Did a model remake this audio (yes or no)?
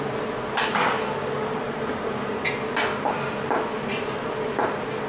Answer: no